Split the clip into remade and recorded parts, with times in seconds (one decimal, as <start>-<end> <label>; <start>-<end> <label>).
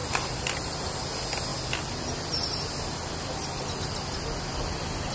0.0-5.1 recorded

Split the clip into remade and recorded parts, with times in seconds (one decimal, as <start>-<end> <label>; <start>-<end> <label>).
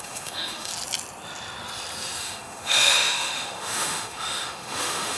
0.0-0.7 remade; 0.7-2.2 recorded; 2.2-5.2 remade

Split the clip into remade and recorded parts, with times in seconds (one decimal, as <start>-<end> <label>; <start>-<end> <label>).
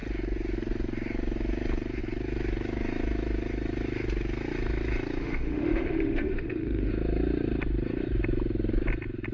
0.0-5.2 recorded; 5.2-6.9 remade; 6.9-9.3 recorded